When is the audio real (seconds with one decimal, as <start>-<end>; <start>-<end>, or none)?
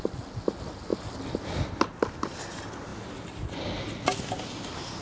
0.0-5.0